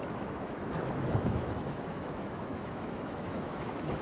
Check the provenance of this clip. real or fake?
fake